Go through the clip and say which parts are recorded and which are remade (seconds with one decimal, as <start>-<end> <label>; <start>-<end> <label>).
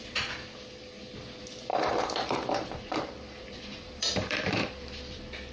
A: 0.0-1.7 recorded; 1.7-5.0 remade; 5.0-5.5 recorded